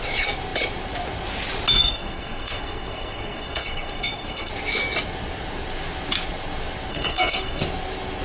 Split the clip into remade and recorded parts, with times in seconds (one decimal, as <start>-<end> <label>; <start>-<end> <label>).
0.0-1.8 recorded; 1.8-4.5 remade; 4.5-6.9 recorded; 6.9-7.6 remade; 7.6-8.2 recorded

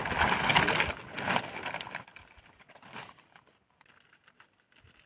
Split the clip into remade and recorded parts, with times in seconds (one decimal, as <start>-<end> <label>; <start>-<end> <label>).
0.0-5.1 recorded